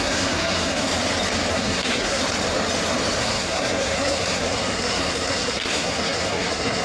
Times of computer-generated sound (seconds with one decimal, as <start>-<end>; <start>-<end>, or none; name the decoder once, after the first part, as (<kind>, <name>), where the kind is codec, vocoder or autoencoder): 0.0-0.9 (codec, SNAC); 1.5-2.2; 3.2-6.8